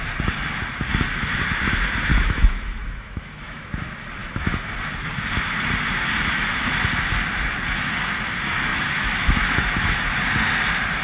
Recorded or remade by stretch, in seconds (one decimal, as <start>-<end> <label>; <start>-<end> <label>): 0.0-2.1 recorded; 2.1-3.7 remade; 3.7-4.2 recorded; 4.2-4.7 remade; 4.7-8.7 recorded; 8.7-10.1 remade; 10.1-11.0 recorded